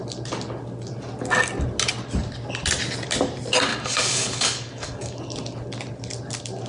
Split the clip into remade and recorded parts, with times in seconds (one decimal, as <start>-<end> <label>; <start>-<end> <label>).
0.0-3.7 recorded; 3.7-5.2 remade; 5.2-6.7 recorded